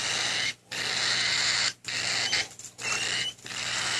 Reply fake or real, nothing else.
real